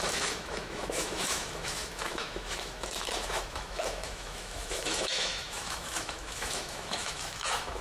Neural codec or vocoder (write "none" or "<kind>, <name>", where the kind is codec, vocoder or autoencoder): autoencoder, DAC-VAE